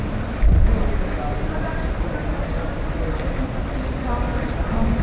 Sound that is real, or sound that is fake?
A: real